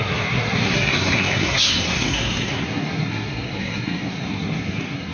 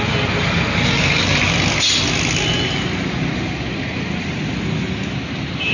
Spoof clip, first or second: first